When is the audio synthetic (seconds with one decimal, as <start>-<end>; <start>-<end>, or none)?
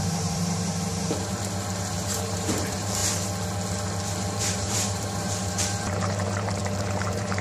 0.0-3.0; 4.4-7.4